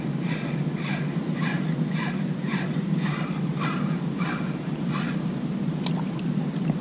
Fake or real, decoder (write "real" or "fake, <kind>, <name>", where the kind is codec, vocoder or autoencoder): real